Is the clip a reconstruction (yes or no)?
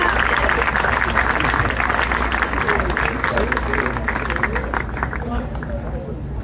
no